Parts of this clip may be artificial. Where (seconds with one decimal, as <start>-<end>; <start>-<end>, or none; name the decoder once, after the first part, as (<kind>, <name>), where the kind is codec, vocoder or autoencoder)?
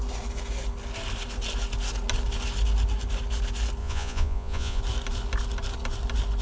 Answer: 3.8-4.8 (vocoder, Vocos)